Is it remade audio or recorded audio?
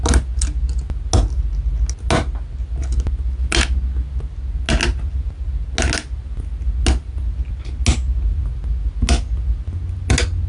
recorded